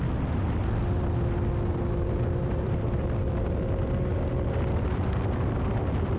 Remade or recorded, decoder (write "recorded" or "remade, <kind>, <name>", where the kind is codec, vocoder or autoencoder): recorded